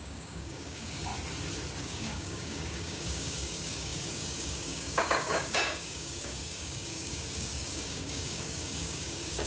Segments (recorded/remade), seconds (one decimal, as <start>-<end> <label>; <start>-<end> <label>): 0.0-1.1 remade; 1.1-1.8 recorded; 1.8-9.5 remade